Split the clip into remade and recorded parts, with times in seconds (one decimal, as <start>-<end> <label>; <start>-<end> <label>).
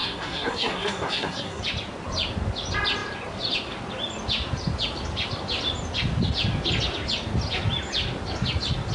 0.0-1.6 remade; 1.6-8.9 recorded